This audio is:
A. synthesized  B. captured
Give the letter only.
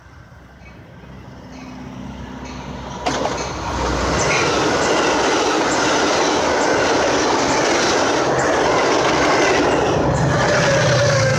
B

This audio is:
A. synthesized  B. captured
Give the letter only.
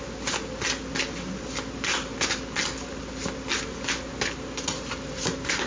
B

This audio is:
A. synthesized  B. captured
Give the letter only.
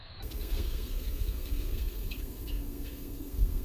A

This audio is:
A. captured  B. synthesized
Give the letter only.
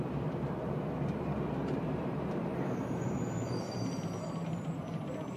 B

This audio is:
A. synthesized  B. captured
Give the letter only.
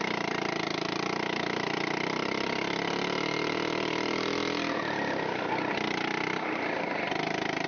B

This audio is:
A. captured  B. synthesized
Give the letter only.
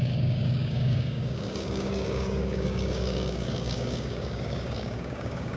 B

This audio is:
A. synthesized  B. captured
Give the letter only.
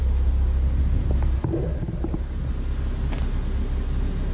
B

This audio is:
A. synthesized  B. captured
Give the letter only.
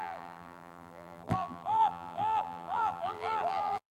A